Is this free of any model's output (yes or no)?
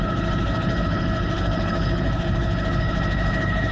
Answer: no